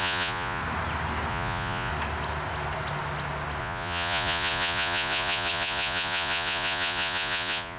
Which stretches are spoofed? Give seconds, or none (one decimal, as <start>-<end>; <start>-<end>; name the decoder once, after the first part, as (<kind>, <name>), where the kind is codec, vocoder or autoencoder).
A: 0.0-0.6 (vocoder, Vocos); 1.3-1.9; 3.6-7.8